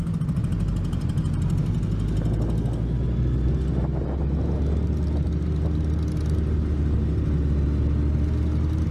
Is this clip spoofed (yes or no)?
no